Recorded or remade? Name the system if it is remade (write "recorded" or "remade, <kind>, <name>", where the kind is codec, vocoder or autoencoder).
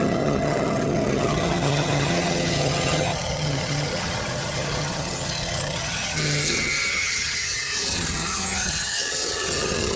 remade, vocoder, HiFi-GAN